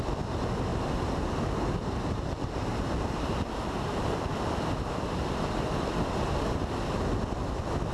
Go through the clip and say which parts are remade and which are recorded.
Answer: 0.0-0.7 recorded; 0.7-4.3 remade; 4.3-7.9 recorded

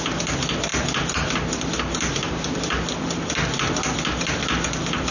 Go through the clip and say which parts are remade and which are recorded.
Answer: 0.0-5.1 recorded

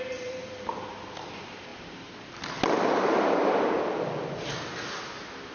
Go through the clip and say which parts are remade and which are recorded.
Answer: 0.0-5.5 recorded

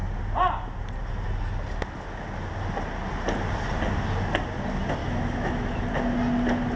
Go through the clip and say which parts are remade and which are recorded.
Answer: 0.0-5.0 recorded; 5.0-5.8 remade; 5.8-6.8 recorded